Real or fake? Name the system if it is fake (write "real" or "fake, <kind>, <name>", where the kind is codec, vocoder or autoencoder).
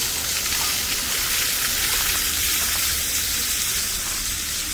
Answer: fake, vocoder, BigVGAN v2